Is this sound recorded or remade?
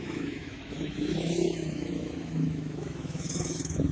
remade